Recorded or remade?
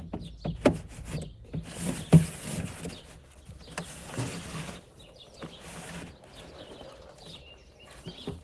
recorded